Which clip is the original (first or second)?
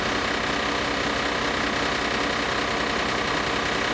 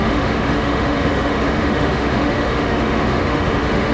first